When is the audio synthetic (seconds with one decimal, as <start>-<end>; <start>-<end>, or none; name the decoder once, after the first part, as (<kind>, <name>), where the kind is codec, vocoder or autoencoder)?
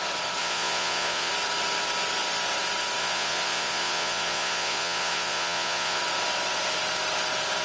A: 0.4-1.3 (vocoder, Vocos); 3.0-6.0